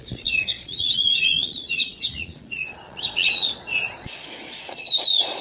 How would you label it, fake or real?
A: fake